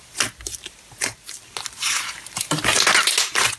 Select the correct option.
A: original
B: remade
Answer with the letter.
A